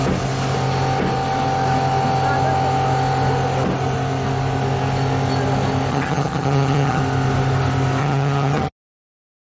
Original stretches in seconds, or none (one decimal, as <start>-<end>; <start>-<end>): 0.0-5.9; 7.0-8.0; 8.7-9.5